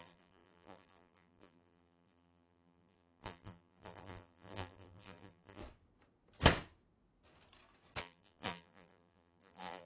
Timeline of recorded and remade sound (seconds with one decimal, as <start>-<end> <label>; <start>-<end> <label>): 0.0-5.6 remade; 5.6-8.0 recorded; 8.0-9.9 remade